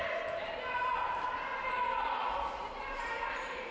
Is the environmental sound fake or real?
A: real